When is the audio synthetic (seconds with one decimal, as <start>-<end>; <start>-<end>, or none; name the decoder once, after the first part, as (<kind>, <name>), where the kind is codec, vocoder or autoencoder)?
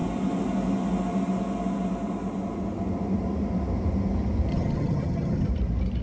4.5-5.5 (vocoder, HiFi-GAN)